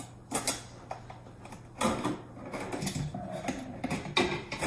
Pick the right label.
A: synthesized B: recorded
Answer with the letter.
B